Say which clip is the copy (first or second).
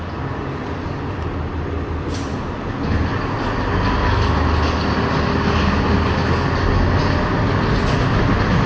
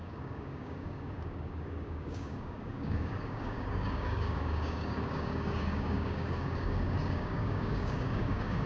second